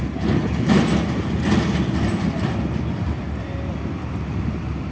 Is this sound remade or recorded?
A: recorded